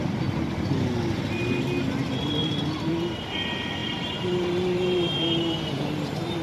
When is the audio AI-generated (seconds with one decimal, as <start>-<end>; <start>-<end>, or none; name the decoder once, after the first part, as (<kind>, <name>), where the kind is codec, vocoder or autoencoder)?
2.4-2.9 (vocoder, BigVGAN v2); 3.8-6.4